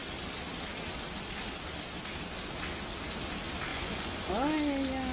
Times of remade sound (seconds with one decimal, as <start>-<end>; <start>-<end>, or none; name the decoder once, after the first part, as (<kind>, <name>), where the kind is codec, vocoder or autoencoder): 3.7-4.3 (vocoder, Vocos)